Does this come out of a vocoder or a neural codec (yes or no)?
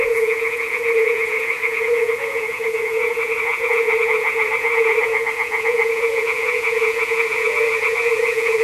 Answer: yes